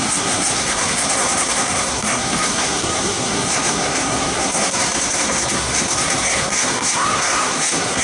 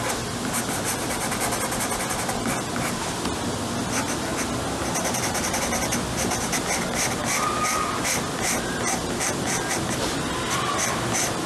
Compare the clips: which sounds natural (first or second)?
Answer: second